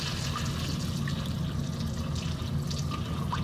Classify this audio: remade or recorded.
recorded